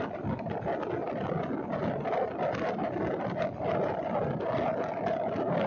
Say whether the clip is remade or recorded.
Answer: recorded